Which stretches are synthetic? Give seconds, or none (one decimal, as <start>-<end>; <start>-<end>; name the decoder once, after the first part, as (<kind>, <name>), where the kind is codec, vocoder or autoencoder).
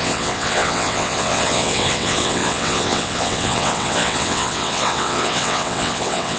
0.0-6.4 (vocoder, WaveNeXt)